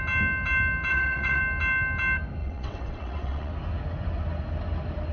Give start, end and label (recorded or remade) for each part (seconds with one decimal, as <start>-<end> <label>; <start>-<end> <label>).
0.0-0.9 recorded; 0.9-1.4 remade; 1.4-2.4 recorded; 2.4-3.5 remade; 3.5-5.1 recorded